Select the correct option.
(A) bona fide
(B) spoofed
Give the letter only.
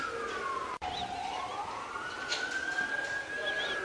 A